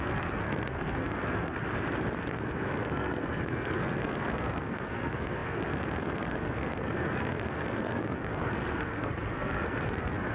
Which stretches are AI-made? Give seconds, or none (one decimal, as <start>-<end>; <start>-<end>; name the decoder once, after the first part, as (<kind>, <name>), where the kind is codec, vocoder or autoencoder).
0.0-1.6 (codec, SNAC); 2.3-10.3